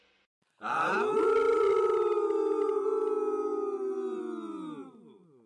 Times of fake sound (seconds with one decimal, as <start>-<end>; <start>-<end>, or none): none